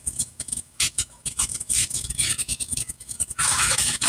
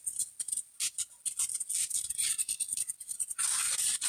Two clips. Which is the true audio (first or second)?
second